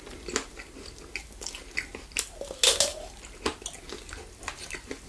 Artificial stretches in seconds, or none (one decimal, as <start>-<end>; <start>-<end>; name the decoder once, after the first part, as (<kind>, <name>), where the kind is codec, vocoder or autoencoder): none